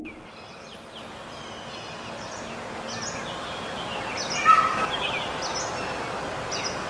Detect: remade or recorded recorded